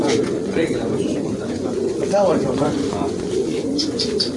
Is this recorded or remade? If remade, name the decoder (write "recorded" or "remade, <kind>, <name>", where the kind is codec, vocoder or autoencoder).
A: remade, vocoder, Vocos